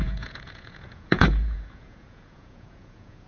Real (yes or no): no